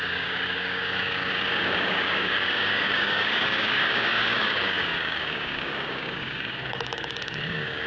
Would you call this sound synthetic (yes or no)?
yes